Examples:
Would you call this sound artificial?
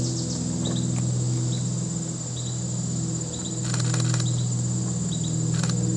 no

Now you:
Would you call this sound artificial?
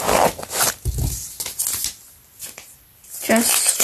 no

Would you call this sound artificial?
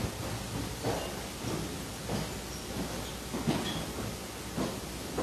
no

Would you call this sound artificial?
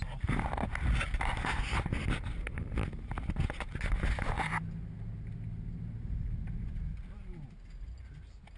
no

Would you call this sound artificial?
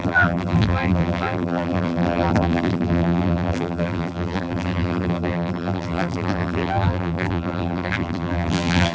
yes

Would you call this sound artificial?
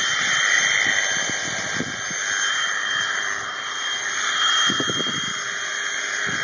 yes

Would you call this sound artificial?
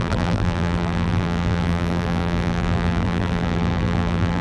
yes